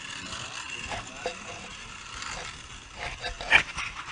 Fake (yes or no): no